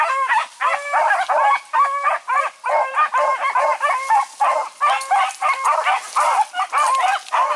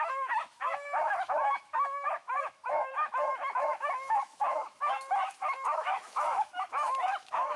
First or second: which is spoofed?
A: second